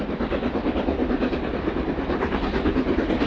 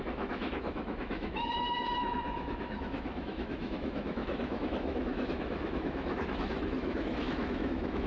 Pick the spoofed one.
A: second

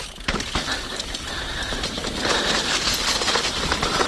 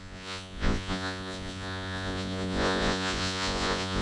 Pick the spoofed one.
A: second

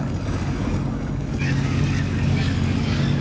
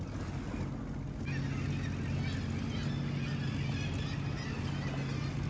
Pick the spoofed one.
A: first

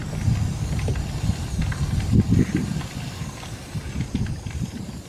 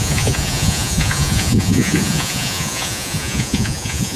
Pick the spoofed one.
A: second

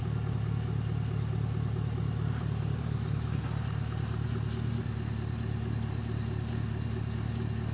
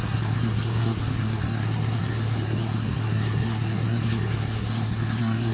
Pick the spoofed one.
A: second